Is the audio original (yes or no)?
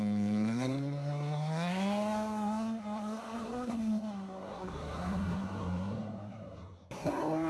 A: no